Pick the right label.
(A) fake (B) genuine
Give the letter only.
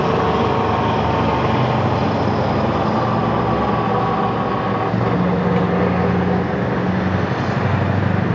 B